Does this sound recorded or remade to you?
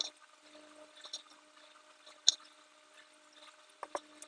recorded